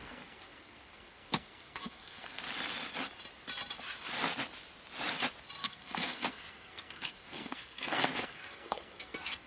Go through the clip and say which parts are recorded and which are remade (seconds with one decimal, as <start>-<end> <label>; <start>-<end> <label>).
0.0-2.4 remade; 2.4-5.6 recorded; 5.6-9.5 remade